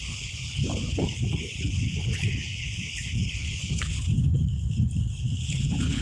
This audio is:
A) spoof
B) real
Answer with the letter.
A